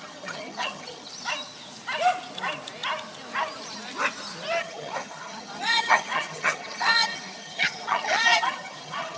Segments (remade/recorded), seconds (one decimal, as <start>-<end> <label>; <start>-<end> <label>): 0.0-1.1 remade; 1.1-4.6 recorded; 4.6-9.2 remade